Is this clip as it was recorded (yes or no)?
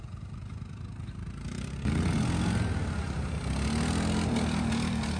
yes